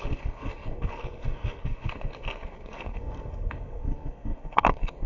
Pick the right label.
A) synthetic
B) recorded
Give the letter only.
A